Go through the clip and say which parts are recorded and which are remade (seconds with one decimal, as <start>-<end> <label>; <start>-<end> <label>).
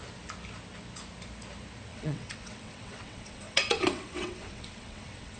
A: 0.0-1.9 recorded; 1.9-5.4 remade